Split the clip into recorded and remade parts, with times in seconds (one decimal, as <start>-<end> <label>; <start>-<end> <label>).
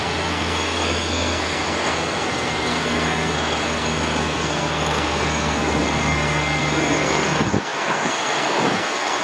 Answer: 0.0-9.2 remade